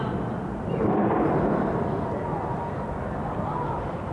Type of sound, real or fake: real